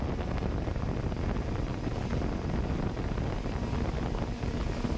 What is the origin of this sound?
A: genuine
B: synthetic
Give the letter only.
A